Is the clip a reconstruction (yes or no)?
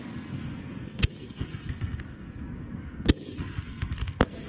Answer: yes